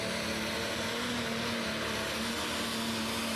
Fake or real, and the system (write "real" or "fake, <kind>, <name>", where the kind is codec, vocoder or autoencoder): real